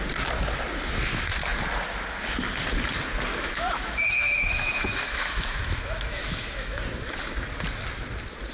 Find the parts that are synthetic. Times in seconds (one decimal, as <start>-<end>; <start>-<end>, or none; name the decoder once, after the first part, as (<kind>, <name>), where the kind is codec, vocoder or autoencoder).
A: 3.3-6.8 (autoencoder, DAC-VAE)